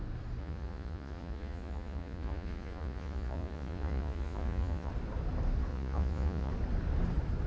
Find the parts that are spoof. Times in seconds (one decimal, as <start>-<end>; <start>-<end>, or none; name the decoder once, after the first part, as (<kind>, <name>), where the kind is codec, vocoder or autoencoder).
0.4-4.9 (vocoder, Vocos); 5.7-6.5